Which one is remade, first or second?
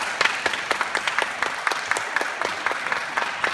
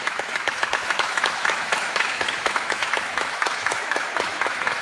second